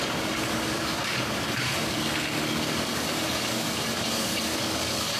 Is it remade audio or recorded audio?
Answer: remade